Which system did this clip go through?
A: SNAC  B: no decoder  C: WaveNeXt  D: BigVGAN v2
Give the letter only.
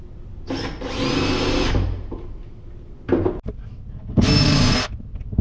B